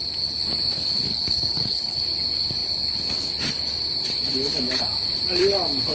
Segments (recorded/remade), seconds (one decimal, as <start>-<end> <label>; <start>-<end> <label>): 0.0-1.1 recorded; 1.1-2.0 remade; 2.0-5.9 recorded